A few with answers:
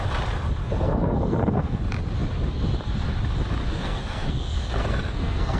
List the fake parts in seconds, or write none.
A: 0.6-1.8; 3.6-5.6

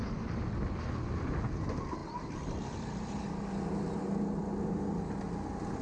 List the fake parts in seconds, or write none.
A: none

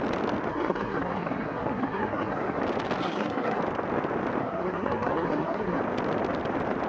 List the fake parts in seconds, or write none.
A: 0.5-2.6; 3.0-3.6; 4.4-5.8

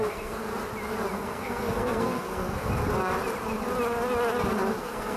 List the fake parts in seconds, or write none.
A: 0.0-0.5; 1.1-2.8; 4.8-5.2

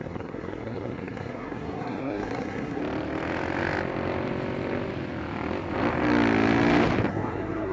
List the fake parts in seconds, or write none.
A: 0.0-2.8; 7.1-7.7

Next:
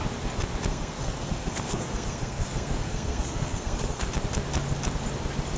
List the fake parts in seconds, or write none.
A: 0.7-4.1